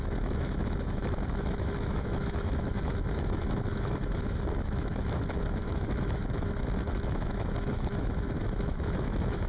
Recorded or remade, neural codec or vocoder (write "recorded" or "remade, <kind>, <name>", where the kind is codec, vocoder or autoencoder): remade, autoencoder, DAC-VAE